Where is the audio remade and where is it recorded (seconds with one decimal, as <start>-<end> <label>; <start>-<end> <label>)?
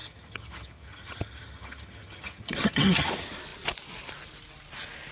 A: 0.0-3.1 remade; 3.1-5.1 recorded